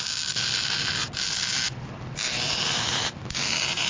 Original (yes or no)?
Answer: yes